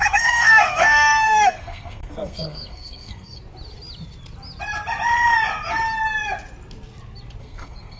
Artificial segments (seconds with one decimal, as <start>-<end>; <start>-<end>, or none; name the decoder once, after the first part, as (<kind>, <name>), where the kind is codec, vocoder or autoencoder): 0.0-3.4 (codec, SNAC); 7.4-8.0